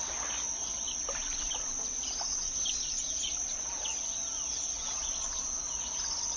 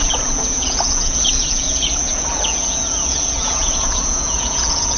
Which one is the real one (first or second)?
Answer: first